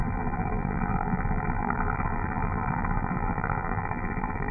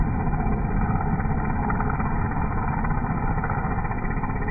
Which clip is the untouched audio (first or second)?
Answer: second